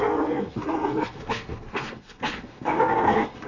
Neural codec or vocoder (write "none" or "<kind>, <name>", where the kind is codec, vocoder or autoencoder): codec, SNAC